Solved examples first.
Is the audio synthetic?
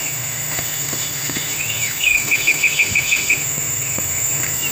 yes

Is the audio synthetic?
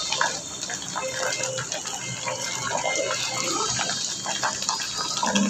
no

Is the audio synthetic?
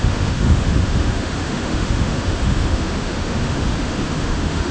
yes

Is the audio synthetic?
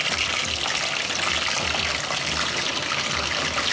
no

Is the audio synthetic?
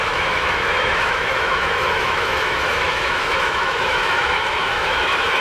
yes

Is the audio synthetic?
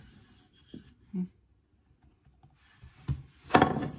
no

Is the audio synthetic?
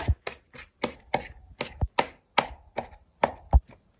no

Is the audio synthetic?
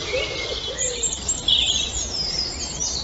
no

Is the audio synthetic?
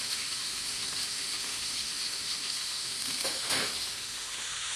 yes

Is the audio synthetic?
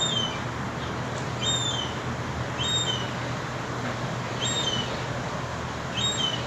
no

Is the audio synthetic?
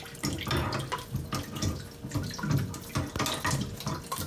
no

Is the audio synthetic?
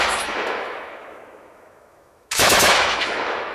yes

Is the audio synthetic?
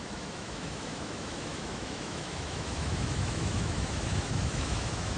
yes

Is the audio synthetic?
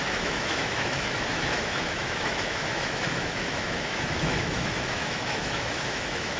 yes